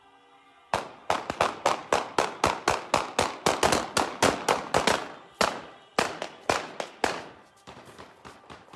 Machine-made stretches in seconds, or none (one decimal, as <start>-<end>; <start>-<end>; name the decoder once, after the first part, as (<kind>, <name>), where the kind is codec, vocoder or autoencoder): none

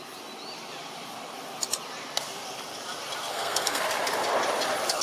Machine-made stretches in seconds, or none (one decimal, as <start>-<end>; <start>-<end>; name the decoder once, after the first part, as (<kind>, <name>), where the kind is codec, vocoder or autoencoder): 3.3-3.8 (codec, SNAC)